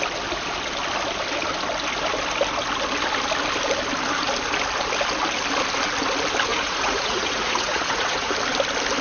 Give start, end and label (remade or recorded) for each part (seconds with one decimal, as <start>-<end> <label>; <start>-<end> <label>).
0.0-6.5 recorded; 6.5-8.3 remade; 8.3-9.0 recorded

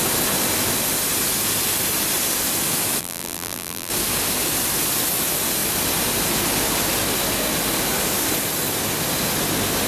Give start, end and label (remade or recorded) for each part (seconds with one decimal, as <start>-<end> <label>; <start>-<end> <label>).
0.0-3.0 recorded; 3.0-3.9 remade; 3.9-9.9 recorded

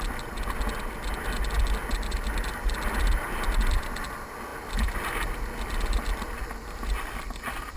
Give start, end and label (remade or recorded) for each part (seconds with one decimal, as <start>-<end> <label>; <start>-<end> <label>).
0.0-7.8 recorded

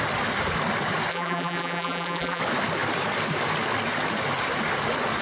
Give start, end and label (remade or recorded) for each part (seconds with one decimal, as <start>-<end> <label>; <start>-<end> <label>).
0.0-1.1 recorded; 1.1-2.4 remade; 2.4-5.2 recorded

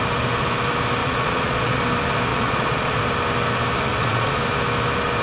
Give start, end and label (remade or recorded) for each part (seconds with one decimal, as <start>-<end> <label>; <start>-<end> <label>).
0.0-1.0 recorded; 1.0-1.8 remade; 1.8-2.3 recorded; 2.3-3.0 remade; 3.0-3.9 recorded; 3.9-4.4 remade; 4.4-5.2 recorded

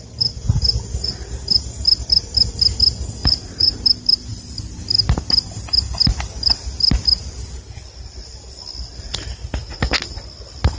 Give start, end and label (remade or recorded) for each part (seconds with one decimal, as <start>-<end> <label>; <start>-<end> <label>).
0.0-3.2 recorded; 3.2-3.8 remade; 3.8-9.6 recorded; 9.6-10.2 remade; 10.2-10.8 recorded